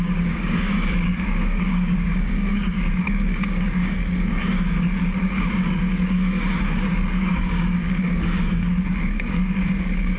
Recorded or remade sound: remade